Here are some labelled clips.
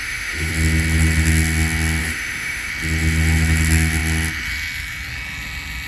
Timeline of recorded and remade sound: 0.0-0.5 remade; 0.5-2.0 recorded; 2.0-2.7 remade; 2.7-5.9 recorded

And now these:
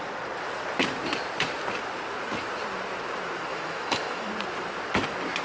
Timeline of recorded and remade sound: 0.0-3.5 recorded; 3.5-4.3 remade; 4.3-5.4 recorded

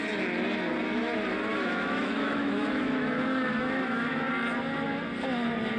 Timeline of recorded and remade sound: 0.0-1.5 recorded; 1.5-4.3 remade; 4.3-5.8 recorded

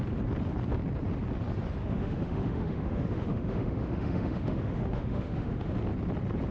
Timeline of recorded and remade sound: 0.0-1.8 recorded; 1.8-5.7 remade; 5.7-6.5 recorded

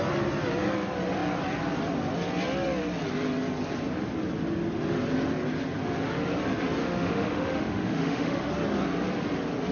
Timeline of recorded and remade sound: 0.0-6.8 recorded; 6.8-8.5 remade; 8.5-9.7 recorded